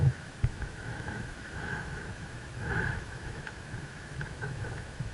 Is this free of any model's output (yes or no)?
no